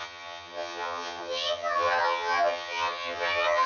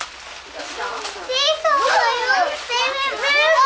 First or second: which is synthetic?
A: first